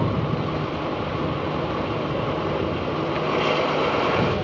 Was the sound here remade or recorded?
recorded